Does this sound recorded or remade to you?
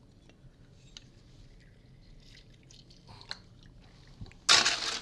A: recorded